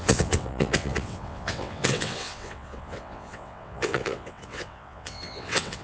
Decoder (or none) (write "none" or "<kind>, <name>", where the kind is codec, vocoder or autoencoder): vocoder, WaveNeXt